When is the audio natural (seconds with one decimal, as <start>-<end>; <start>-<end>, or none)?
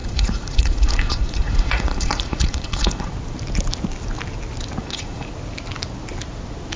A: 3.1-4.8; 5.3-6.8